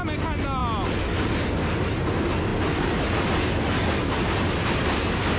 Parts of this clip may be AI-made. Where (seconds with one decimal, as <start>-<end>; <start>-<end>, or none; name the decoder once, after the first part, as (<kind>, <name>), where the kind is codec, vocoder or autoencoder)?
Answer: none